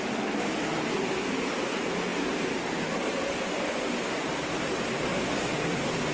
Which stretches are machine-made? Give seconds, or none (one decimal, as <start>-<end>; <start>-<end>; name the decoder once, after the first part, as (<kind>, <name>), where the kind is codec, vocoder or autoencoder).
5.1-6.1 (vocoder, BigVGAN v2)